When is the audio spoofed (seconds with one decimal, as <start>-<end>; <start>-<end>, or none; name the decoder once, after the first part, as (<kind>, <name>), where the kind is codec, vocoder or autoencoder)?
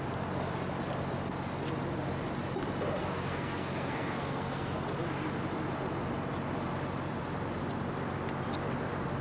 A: 3.0-4.8 (codec, SNAC)